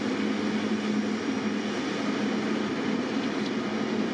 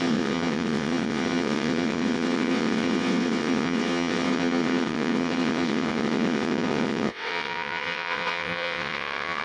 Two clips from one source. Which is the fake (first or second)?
second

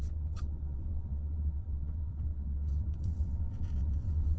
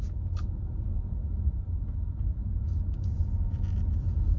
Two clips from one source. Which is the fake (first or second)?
first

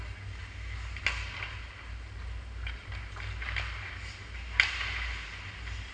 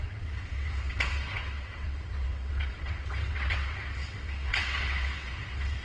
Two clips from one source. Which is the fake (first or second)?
second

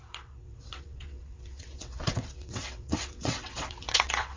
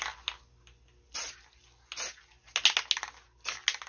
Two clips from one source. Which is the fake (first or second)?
first